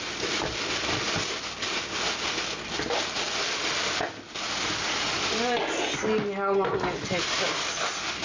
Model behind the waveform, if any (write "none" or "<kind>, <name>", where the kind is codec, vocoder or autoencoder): none